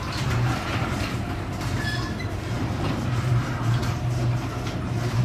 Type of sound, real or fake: fake